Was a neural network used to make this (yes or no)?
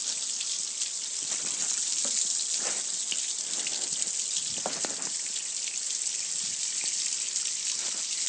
no